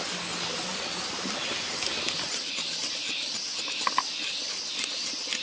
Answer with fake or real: real